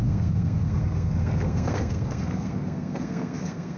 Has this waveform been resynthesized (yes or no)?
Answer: yes